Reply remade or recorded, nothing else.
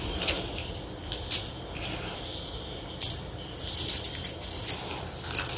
remade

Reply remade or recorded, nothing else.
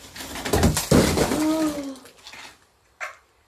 recorded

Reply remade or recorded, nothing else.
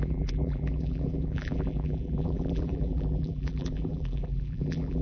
remade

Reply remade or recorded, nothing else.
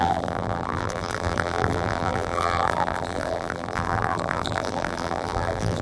remade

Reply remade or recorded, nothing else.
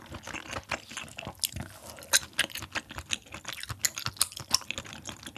recorded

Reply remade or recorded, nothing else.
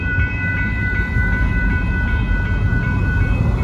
remade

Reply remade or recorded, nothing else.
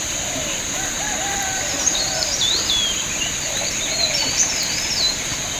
recorded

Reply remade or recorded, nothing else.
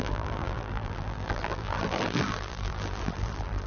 remade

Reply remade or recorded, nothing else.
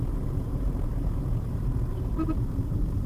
remade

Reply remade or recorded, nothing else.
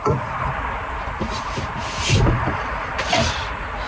remade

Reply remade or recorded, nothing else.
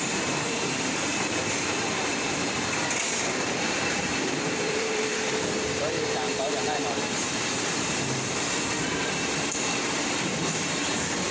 remade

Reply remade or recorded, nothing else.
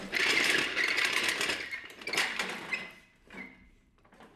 remade